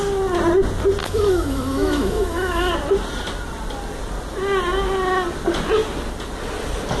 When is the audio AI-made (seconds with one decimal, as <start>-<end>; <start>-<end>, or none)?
1.0-2.7